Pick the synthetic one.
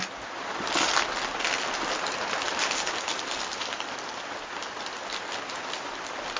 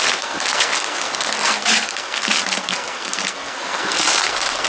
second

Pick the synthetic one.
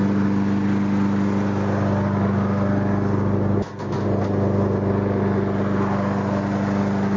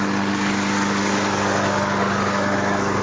second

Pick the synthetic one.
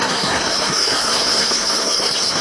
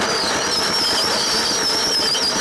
first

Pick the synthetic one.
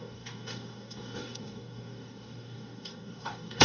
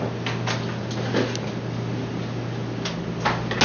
first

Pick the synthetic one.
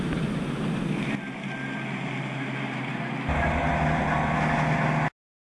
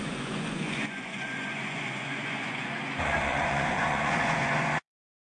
second